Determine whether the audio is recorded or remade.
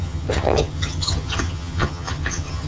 remade